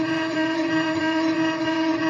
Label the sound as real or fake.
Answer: fake